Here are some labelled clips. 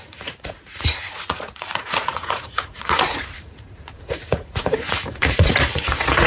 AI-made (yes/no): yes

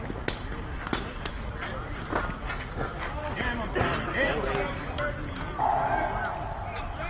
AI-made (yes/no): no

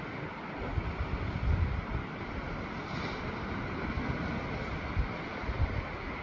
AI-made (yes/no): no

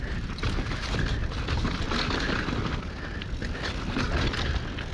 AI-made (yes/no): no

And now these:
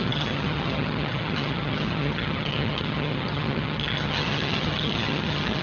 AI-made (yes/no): yes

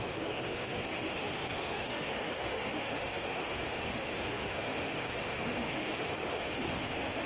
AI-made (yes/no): yes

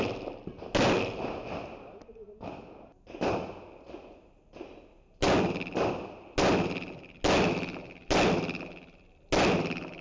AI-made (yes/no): no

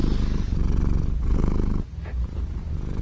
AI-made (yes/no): no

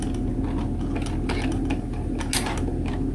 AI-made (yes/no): no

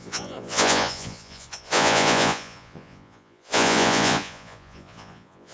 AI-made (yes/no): yes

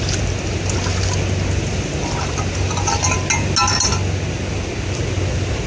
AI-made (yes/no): no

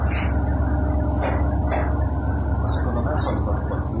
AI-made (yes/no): no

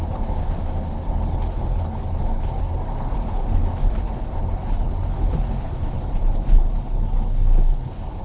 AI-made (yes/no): yes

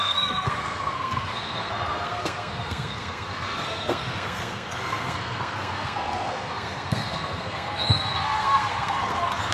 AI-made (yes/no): yes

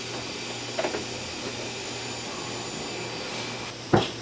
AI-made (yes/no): no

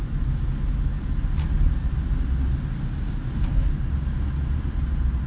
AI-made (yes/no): no